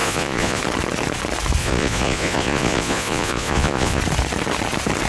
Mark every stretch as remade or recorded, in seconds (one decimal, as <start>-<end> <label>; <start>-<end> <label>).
0.0-0.6 remade; 0.6-1.6 recorded; 1.6-4.0 remade; 4.0-5.1 recorded